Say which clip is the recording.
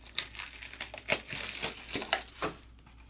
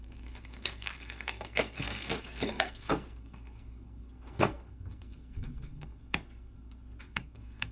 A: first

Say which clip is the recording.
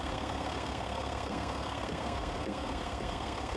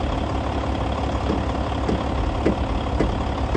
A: second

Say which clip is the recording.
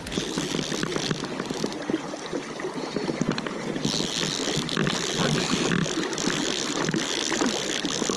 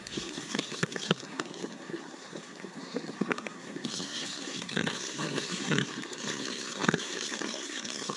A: first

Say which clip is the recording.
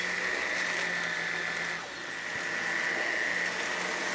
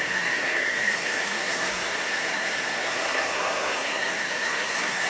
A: first